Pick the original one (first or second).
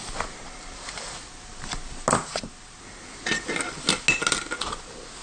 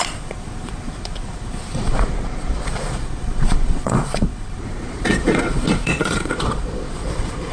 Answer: first